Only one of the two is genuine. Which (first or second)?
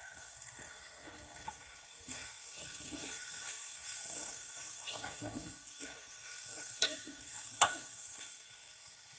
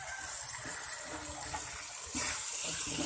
second